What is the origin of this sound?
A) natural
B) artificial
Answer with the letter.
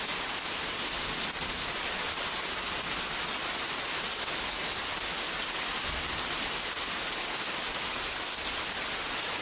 A